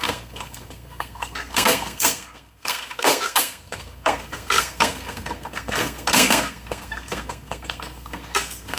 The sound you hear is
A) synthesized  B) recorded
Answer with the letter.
A